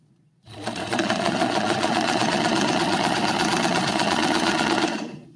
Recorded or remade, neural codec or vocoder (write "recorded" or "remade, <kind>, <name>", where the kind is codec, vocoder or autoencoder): remade, vocoder, Vocos